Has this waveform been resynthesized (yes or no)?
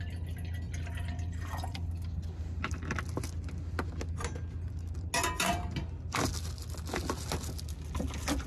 no